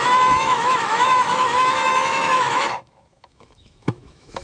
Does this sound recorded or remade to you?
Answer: remade